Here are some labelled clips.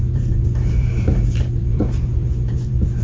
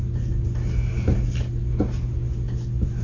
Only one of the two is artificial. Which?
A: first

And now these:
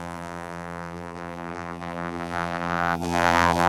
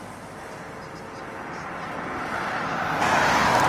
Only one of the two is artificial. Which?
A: first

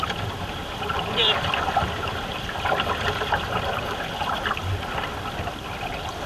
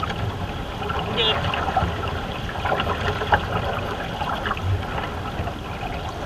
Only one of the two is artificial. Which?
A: first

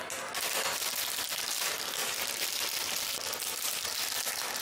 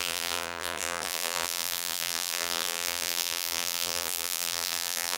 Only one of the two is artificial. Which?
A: second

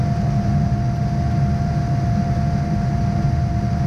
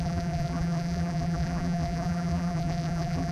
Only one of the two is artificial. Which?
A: second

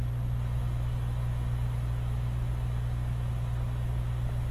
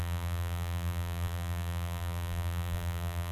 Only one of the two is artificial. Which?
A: second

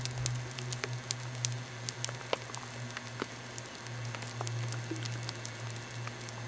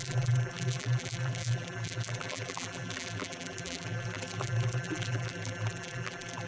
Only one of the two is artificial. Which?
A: second